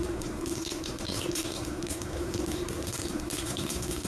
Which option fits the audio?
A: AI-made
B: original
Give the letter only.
A